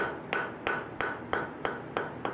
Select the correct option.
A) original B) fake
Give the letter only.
A